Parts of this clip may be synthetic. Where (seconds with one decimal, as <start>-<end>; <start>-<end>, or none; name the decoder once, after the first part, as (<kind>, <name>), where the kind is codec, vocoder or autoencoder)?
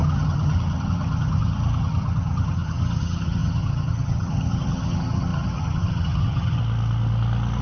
0.0-6.6 (vocoder, HiFi-GAN)